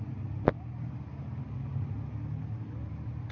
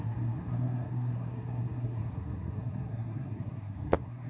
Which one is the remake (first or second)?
second